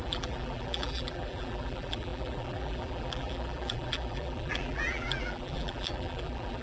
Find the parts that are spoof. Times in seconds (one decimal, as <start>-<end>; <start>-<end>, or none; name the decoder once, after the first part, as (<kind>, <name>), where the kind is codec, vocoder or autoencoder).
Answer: 0.0-6.6 (vocoder, BigVGAN v2)